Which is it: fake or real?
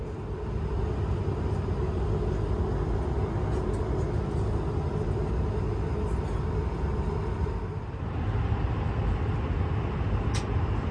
real